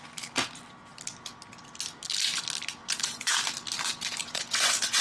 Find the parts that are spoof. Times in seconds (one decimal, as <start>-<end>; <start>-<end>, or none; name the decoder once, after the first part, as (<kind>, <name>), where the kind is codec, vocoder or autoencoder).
2.8-3.3 (vocoder, Vocos); 4.2-5.0